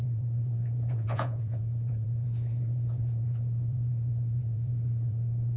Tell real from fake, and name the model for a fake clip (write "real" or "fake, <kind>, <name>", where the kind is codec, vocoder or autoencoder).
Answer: fake, vocoder, Vocos